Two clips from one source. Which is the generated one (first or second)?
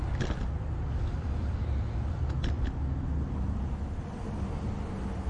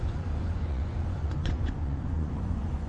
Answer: second